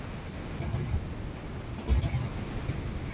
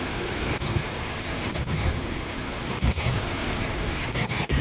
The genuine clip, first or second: first